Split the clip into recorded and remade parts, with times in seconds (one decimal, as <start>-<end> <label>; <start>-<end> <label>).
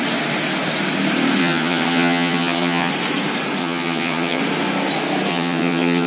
0.0-1.4 recorded; 1.4-2.9 remade; 2.9-3.6 recorded; 3.6-4.4 remade; 4.4-5.3 recorded; 5.3-6.1 remade